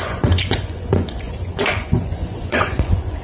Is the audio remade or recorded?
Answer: remade